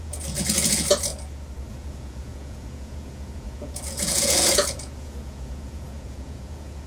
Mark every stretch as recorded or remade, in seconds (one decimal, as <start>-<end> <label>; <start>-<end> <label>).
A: 0.0-1.1 remade; 1.1-1.7 recorded; 1.7-6.9 remade